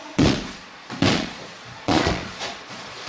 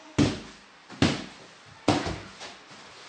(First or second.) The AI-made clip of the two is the first